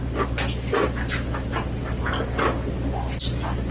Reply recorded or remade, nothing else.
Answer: recorded